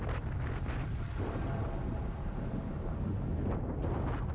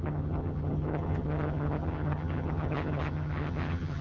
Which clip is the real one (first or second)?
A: first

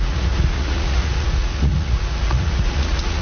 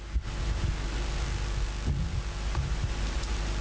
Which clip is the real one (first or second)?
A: second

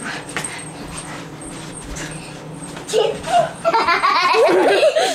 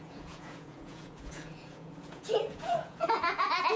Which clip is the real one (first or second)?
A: first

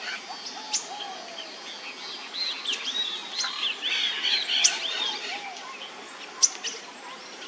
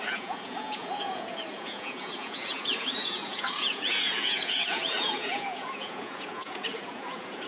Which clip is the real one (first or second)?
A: first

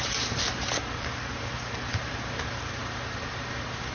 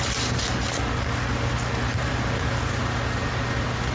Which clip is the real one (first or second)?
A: second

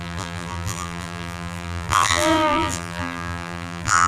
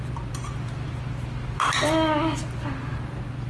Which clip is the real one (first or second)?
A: second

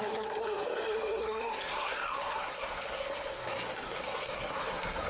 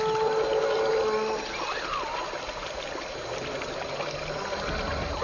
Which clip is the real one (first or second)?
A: second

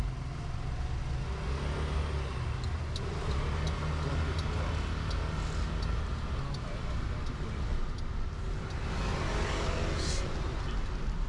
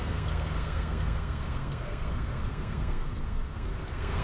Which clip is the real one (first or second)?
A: first